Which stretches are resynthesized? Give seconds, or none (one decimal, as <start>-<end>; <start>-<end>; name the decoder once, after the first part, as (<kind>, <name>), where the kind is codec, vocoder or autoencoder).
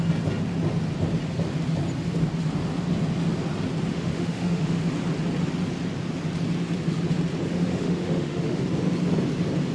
3.9-4.8 (autoencoder, DAC-VAE); 7.5-8.6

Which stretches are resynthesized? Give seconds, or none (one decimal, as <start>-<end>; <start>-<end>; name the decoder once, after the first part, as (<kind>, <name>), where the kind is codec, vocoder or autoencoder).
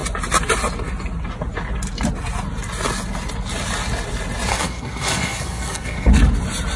4.5-6.1 (codec, SNAC)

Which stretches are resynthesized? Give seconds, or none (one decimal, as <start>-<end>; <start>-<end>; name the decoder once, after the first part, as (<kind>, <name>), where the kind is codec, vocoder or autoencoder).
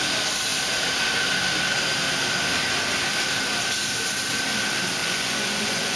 5.0-6.0 (vocoder, Vocos)